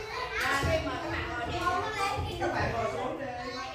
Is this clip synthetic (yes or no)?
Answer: no